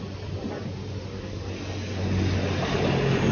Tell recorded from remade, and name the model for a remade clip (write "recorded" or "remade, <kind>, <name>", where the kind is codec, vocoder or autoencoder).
recorded